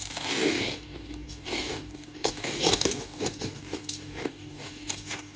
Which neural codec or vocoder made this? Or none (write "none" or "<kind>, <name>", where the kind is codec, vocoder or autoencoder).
codec, DAC